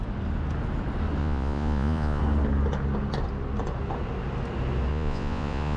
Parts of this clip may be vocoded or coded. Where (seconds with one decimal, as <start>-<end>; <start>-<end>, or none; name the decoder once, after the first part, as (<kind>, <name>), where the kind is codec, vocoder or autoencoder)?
1.2-2.2 (vocoder, Vocos); 4.9-5.8